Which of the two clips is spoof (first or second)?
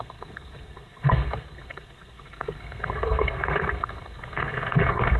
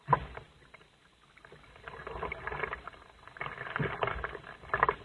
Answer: first